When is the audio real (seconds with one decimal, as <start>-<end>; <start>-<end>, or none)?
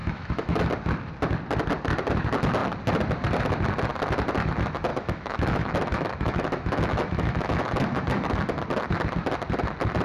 0.7-4.9; 8.5-10.0